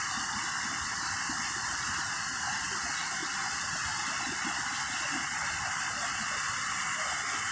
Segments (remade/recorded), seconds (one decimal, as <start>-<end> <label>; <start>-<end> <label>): 0.0-7.5 recorded